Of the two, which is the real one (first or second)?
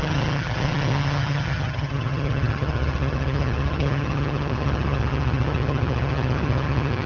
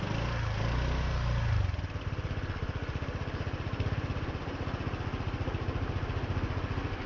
second